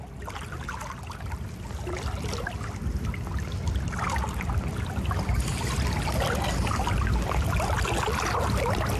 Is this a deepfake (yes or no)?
no